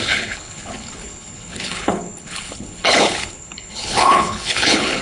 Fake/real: fake